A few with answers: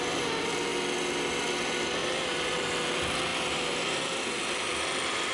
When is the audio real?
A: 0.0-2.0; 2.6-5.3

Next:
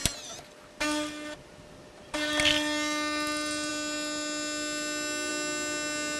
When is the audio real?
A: 0.0-6.2

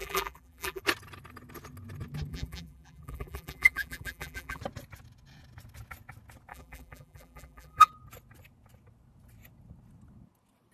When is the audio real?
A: 0.8-2.3; 4.6-6.5; 7.9-10.7

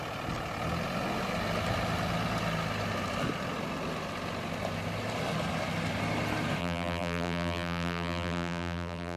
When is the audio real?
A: 0.0-6.6

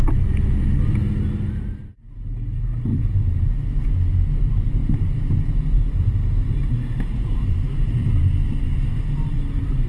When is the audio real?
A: 0.0-2.9; 3.5-4.8

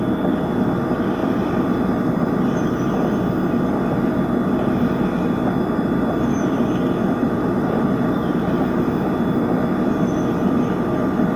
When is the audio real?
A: 0.0-1.2; 1.9-7.2; 8.9-11.4

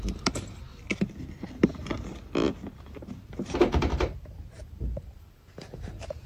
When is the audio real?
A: 0.7-2.8